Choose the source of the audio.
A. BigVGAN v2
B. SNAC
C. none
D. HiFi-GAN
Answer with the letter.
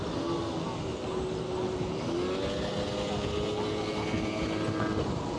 C